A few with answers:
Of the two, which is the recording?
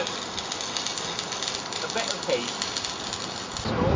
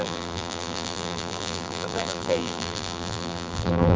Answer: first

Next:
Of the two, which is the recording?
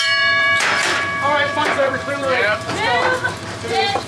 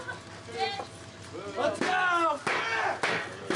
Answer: second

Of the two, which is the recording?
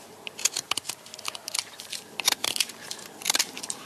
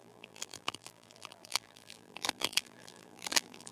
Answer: first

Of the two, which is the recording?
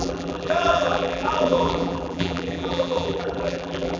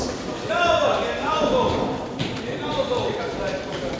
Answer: second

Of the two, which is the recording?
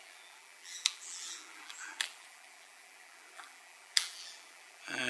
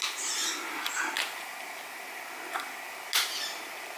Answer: second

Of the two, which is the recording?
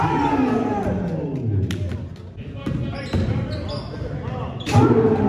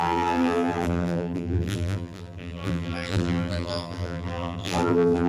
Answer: first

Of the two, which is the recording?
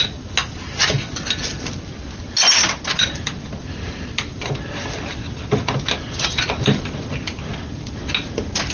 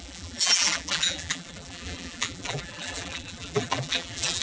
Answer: first